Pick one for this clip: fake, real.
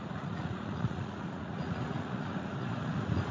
fake